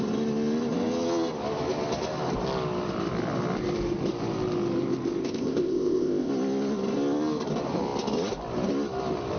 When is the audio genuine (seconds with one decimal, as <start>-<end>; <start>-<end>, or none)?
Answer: 0.0-5.2; 6.3-9.4